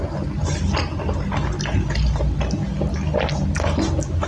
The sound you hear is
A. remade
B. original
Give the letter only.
B